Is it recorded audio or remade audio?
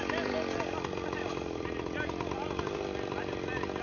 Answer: recorded